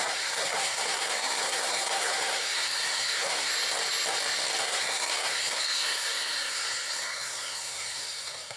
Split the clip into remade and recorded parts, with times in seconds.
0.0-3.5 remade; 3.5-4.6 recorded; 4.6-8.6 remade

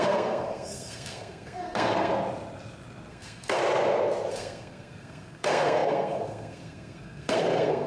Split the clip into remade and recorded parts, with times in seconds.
0.0-2.1 remade; 2.1-3.1 recorded; 3.1-3.6 remade; 3.6-4.3 recorded; 4.3-7.9 remade

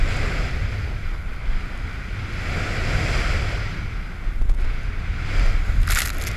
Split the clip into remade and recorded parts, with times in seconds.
0.0-6.4 recorded

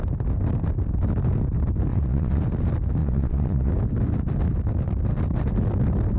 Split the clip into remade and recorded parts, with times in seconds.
0.0-1.9 recorded; 1.9-2.4 remade; 2.4-3.0 recorded; 3.0-3.7 remade; 3.7-6.2 recorded

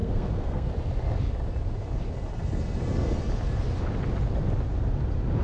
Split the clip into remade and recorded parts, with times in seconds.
0.0-0.7 remade; 0.7-5.4 recorded

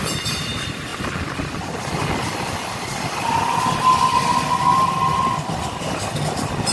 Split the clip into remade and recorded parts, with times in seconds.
0.0-6.7 recorded

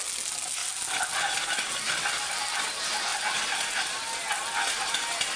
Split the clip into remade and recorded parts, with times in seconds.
0.0-5.4 recorded

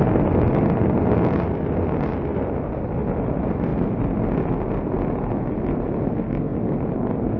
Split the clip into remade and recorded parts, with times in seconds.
0.0-7.4 recorded